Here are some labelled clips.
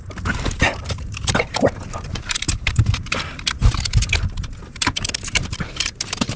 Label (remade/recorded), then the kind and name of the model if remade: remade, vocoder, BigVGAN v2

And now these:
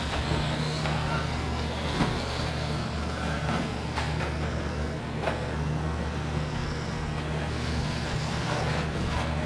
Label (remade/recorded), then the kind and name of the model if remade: remade, codec, SNAC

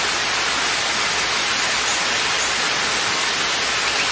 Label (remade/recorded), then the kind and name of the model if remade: recorded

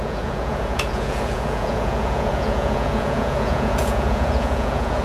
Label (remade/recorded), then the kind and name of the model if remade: remade, vocoder, Vocos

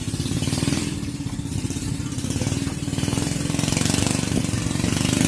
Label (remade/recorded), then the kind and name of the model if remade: remade, vocoder, BigVGAN v2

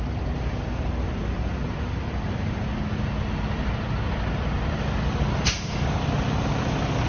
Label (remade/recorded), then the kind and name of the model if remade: recorded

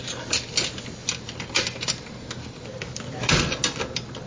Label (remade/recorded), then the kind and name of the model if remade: recorded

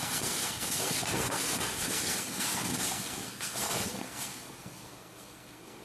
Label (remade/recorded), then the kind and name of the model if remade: remade, codec, SNAC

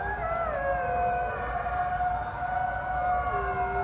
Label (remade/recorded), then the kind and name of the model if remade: recorded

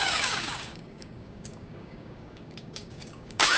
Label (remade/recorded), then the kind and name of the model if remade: remade, codec, DAC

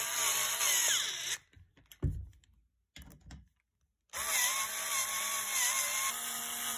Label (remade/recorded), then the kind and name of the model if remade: recorded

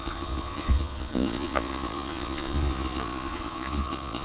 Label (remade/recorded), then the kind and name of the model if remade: remade, vocoder, Vocos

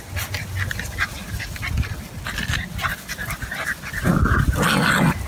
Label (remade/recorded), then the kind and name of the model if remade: recorded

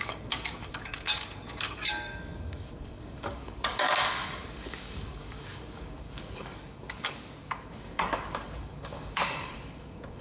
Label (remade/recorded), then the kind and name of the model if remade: remade, codec, DAC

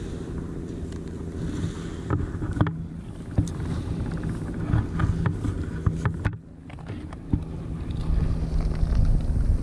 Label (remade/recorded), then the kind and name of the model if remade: recorded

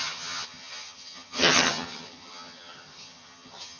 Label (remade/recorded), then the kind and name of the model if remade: remade, vocoder, HiFi-GAN